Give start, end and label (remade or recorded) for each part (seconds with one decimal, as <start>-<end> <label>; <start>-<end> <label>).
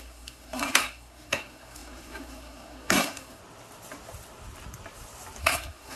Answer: 0.0-3.4 remade; 3.4-5.4 recorded; 5.4-6.0 remade